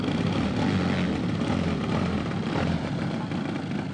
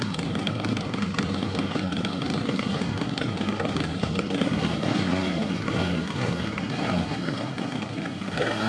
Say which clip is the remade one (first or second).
second